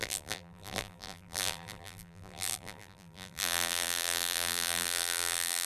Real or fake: fake